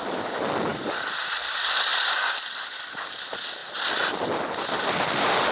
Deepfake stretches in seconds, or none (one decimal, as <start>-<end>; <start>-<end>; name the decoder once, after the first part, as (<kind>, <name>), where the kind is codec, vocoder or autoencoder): 0.7-1.2 (vocoder, BigVGAN v2); 1.9-3.0; 3.6-4.9